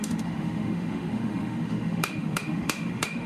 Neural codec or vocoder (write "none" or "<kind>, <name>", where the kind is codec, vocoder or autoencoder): autoencoder, DAC-VAE